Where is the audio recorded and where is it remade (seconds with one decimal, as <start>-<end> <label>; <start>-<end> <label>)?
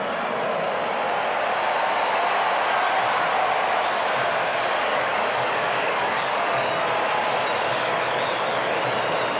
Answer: 0.0-4.9 recorded; 4.9-6.7 remade; 6.7-7.7 recorded; 7.7-8.8 remade; 8.8-9.4 recorded